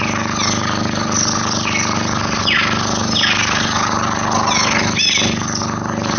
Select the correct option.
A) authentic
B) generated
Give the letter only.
A